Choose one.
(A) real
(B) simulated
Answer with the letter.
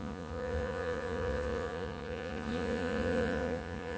B